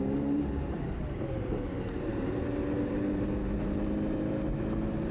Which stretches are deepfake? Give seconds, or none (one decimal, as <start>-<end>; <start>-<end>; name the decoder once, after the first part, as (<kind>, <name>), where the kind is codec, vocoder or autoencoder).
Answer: 0.0-5.1 (vocoder, BigVGAN v2)